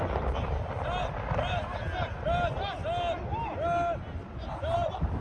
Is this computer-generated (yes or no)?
no